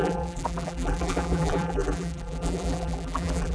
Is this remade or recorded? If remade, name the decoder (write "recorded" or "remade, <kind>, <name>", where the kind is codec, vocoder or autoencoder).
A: remade, vocoder, BigVGAN v2